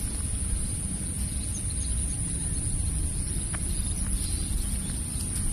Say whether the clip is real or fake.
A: real